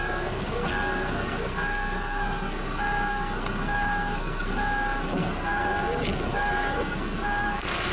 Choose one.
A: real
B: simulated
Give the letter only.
B